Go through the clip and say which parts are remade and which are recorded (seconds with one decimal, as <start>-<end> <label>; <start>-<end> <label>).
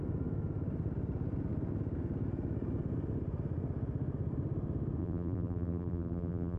0.0-5.0 recorded; 5.0-6.6 remade